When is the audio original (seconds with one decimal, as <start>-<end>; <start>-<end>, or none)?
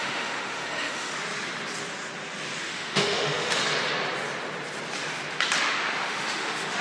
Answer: 1.1-2.6; 3.6-5.6